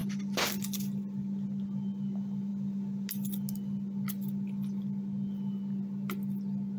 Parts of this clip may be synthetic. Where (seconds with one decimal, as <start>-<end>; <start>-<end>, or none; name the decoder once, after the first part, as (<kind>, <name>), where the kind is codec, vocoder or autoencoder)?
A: none